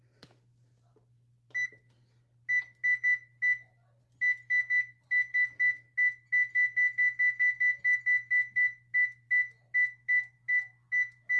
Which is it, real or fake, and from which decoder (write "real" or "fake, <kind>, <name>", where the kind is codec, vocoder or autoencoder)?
real